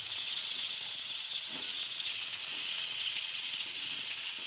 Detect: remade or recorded remade